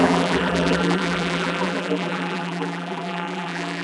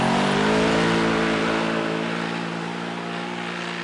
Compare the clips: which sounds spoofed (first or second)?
first